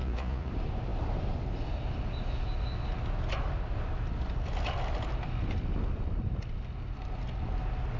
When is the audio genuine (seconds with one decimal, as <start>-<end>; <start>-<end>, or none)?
0.5-8.0